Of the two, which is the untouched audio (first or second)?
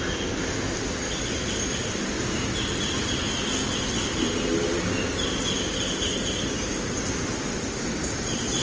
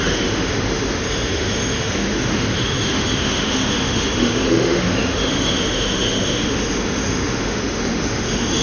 first